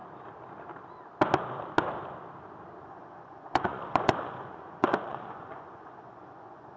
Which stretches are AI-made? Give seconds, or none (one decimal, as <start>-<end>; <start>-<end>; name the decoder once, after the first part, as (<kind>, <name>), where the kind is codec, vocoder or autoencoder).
2.8-6.8 (vocoder, Vocos)